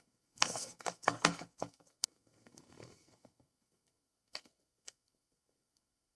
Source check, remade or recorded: remade